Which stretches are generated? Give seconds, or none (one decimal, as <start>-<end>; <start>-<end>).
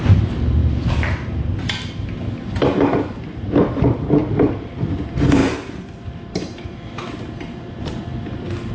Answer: 0.0-0.6; 3.2-8.7